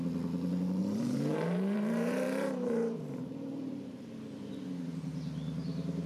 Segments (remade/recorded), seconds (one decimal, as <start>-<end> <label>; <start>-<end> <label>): 0.0-0.8 recorded; 0.8-4.0 remade; 4.0-6.1 recorded